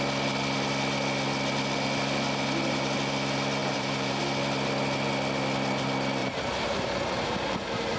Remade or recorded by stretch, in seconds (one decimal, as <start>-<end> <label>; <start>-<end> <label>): 0.0-3.6 recorded; 3.6-4.2 remade; 4.2-6.2 recorded; 6.2-8.0 remade